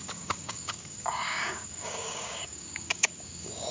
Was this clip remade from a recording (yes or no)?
yes